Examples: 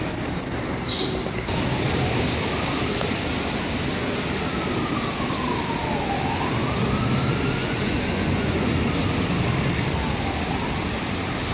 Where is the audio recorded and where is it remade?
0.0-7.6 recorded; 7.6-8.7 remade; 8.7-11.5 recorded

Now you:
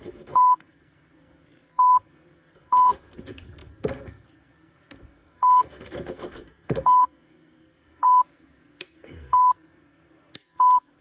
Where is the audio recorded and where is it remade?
0.0-11.0 remade

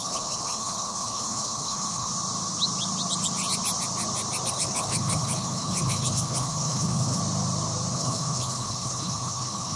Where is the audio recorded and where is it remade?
0.0-2.1 remade; 2.1-4.5 recorded; 4.5-7.2 remade; 7.2-7.9 recorded; 7.9-9.8 remade

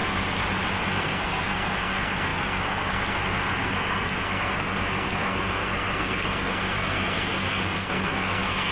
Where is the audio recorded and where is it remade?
0.0-0.7 recorded; 0.7-8.7 remade

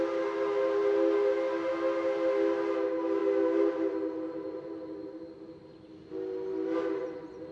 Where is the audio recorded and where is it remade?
0.0-7.5 recorded

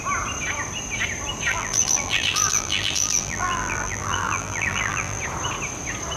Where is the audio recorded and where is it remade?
0.0-1.5 recorded; 1.5-5.2 remade; 5.2-6.2 recorded